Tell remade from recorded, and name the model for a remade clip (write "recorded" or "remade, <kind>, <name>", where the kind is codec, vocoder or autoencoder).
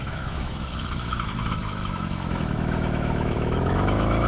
remade, autoencoder, DAC-VAE